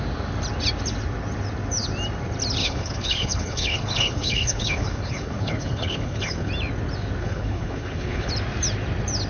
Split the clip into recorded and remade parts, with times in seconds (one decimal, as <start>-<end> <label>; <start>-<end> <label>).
0.0-2.6 recorded; 2.6-6.5 remade; 6.5-7.2 recorded; 7.2-8.3 remade; 8.3-9.3 recorded